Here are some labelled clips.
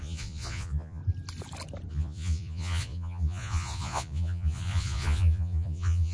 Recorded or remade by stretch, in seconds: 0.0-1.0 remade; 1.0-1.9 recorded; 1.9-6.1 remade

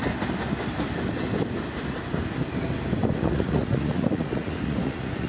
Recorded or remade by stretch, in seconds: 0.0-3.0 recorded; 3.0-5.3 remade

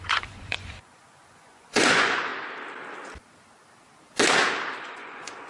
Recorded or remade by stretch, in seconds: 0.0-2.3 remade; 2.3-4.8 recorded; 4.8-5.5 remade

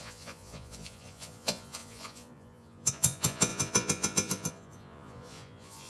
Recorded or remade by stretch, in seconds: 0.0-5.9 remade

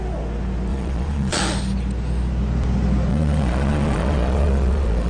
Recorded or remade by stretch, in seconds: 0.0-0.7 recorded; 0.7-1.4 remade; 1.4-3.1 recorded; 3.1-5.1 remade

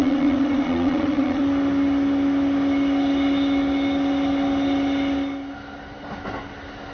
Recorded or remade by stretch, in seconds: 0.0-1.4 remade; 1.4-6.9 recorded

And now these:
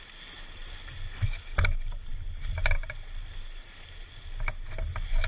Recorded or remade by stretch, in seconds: 0.0-5.3 recorded